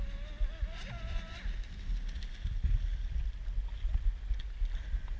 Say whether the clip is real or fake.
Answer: real